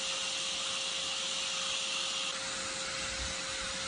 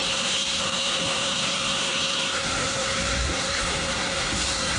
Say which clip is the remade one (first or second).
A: second